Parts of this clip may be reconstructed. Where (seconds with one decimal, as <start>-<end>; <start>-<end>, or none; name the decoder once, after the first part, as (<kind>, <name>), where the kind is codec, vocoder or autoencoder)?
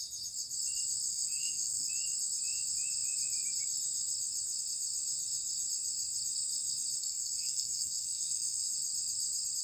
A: 1.1-1.9 (codec, SNAC); 7.0-8.7